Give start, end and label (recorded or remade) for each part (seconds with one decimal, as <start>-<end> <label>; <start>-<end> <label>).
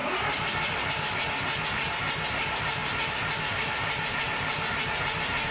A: 0.0-5.5 remade